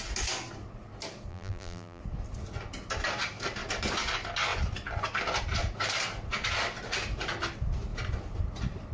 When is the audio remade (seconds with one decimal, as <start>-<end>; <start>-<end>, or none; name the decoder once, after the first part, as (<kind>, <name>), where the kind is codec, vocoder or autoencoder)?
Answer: 1.3-2.0 (vocoder, BigVGAN v2)